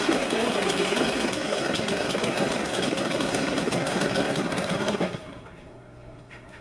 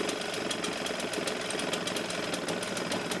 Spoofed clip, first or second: first